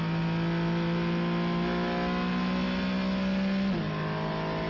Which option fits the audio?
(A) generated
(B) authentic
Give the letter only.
B